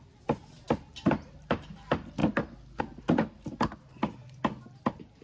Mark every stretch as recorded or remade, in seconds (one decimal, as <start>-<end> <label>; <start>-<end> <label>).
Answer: 0.0-5.2 recorded